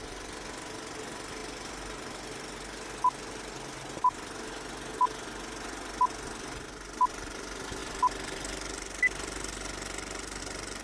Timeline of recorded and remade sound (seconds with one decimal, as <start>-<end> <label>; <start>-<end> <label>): 0.0-10.8 recorded